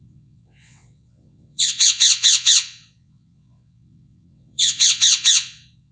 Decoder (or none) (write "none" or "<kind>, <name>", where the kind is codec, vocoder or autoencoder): vocoder, WaveNeXt